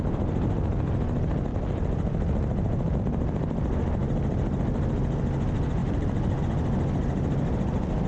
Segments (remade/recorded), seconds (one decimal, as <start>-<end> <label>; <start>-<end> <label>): 0.0-1.5 recorded; 1.5-3.0 remade; 3.0-5.8 recorded; 5.8-6.4 remade; 6.4-8.1 recorded